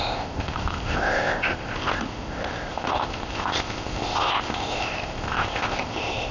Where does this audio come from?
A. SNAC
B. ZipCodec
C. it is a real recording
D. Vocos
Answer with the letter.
B